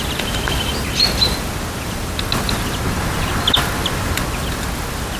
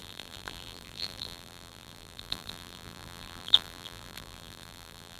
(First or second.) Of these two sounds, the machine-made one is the second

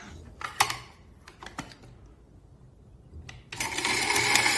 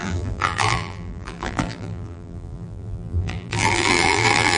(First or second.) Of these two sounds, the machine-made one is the second